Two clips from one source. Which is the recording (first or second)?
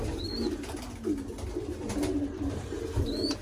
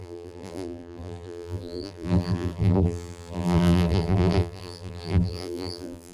first